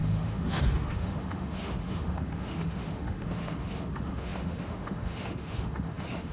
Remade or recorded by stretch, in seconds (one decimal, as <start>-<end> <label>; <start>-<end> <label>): 0.0-6.3 remade